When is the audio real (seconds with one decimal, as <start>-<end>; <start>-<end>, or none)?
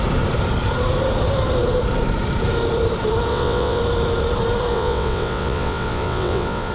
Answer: 0.0-3.3; 3.8-4.7